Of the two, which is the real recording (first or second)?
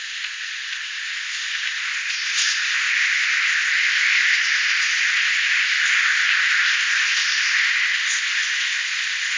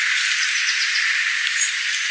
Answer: second